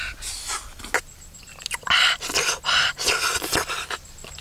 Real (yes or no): yes